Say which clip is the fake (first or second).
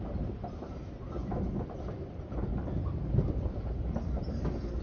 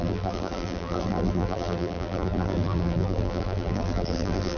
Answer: second